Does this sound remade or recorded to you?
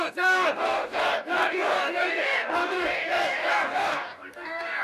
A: remade